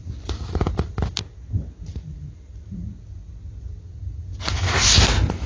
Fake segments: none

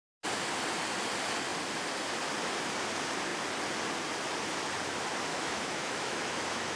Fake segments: 5.3-6.8 (autoencoder, DAC-VAE)

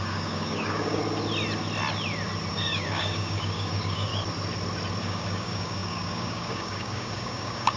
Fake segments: 0.0-1.0 (codec, DAC); 2.5-4.1; 5.0-7.8

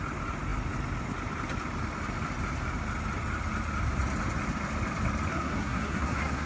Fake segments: 5.3-6.5 (codec, SNAC)

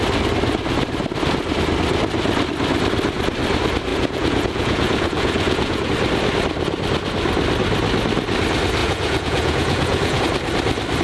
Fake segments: 3.9-5.9 (vocoder, Vocos); 8.8-10.2

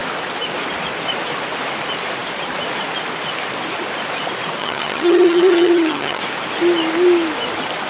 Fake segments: 4.6-6.2 (vocoder, HiFi-GAN)

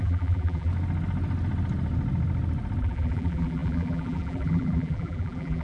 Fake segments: 0.0-0.7 (vocoder, BigVGAN v2); 2.8-5.6

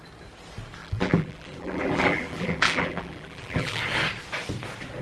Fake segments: 0.8-3.8 (vocoder, BigVGAN v2)